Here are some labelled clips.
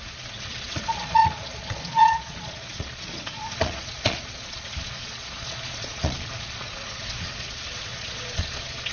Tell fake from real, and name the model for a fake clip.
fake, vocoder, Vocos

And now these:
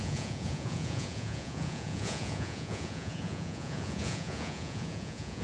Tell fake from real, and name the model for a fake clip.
fake, vocoder, Vocos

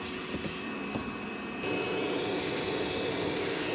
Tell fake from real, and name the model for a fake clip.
real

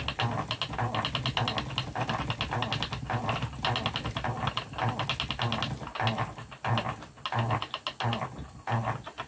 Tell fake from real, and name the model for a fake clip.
real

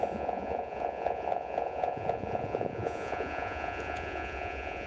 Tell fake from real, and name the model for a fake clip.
fake, vocoder, Vocos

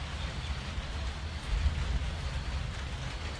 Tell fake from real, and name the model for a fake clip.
real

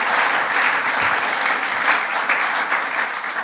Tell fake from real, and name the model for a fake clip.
real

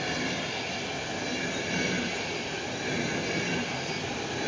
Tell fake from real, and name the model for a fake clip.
real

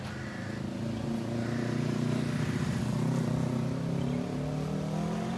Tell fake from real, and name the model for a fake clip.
real